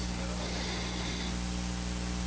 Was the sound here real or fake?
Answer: real